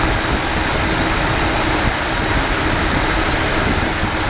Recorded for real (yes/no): yes